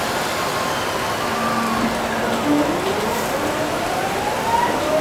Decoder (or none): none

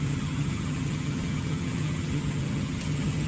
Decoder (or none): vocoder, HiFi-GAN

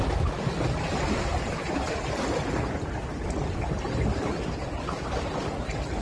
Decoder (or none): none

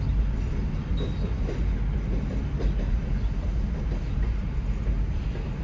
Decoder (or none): none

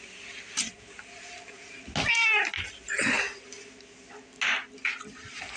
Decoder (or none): none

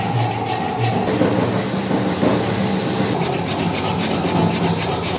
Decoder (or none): none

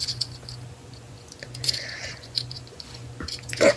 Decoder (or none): vocoder, Vocos